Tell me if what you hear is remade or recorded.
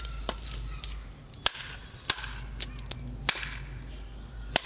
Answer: recorded